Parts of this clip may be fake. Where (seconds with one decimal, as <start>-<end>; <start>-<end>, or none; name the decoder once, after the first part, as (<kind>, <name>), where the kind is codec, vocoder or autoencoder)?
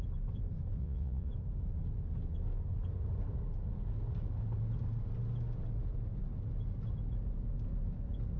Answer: 0.8-1.3 (vocoder, Vocos)